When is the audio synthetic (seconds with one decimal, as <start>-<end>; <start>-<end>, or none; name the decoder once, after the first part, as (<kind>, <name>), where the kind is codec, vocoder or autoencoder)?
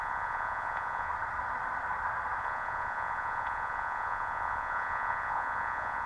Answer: 0.0-1.1 (vocoder, Vocos); 2.4-6.1